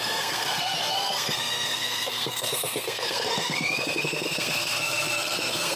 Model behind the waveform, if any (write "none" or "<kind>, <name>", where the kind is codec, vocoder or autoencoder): codec, SNAC